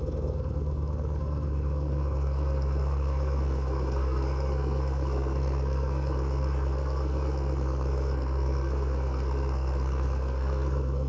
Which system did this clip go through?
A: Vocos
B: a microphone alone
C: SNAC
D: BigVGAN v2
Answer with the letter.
C